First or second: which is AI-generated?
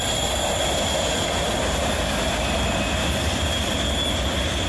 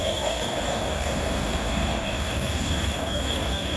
second